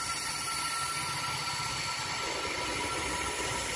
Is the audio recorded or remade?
recorded